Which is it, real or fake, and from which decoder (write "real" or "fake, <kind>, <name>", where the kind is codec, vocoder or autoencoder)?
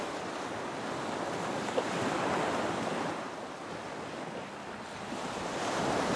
real